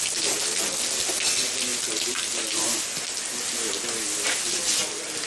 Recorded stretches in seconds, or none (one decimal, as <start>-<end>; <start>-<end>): 0.0-5.3